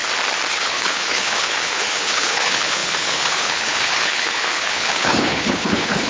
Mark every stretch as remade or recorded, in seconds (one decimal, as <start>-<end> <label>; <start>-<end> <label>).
0.0-0.5 recorded; 0.5-6.1 remade